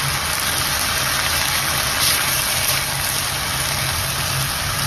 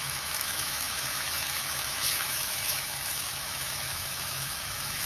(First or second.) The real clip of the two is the first